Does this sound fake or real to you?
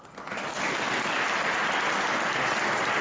real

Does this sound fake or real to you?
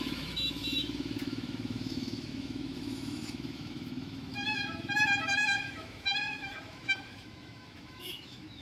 fake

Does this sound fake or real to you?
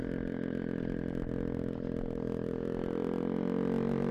real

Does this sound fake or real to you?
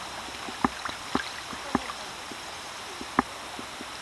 real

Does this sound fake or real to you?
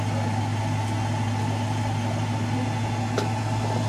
real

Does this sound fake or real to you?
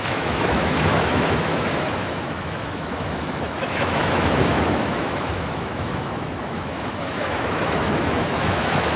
fake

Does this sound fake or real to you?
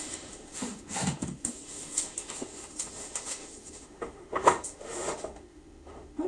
fake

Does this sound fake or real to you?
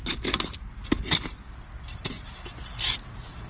real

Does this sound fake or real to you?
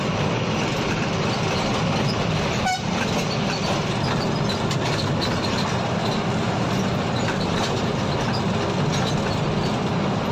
real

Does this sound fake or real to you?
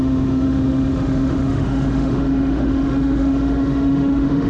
fake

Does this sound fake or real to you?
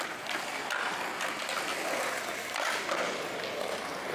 real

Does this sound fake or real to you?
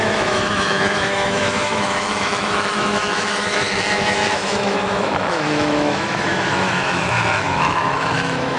fake